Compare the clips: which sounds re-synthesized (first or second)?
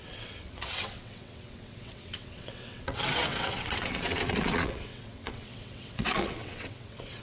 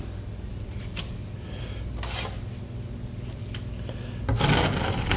first